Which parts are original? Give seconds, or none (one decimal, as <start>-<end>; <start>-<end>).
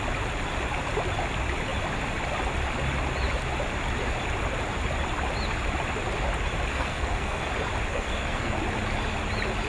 0.0-6.7; 7.5-7.9; 8.6-9.7